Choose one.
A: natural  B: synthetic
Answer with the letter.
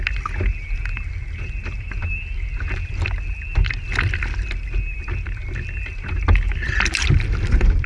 A